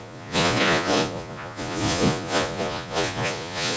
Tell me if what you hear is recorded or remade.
remade